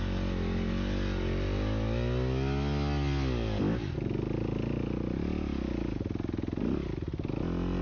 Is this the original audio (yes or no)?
yes